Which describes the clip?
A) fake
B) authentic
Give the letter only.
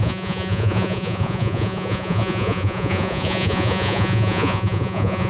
A